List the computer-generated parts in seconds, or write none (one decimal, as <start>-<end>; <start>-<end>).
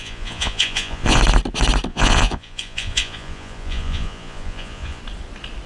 0.0-1.2; 1.9-5.0